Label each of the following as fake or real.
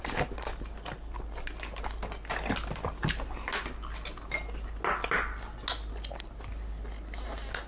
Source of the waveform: real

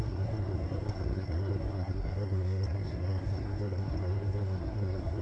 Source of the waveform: fake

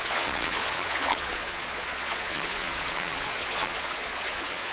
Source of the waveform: fake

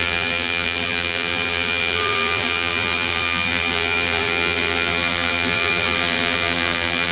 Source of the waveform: fake